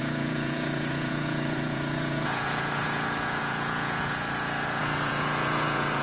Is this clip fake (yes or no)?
yes